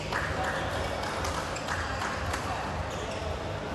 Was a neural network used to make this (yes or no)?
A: yes